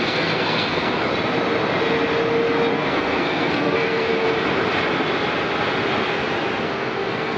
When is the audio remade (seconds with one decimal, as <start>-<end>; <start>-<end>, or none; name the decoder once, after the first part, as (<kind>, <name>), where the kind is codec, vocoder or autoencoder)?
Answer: 0.0-1.1 (codec, SNAC); 2.7-4.1; 6.6-7.4